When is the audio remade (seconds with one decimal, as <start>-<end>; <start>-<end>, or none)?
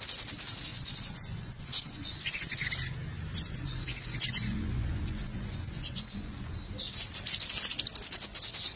0.7-2.7; 3.3-6.6